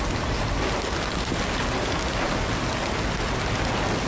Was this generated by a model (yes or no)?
no